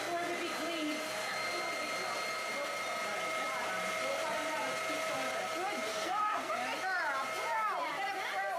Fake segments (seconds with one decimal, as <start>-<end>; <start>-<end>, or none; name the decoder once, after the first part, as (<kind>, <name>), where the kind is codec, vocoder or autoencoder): 5.9-6.5 (codec, SNAC)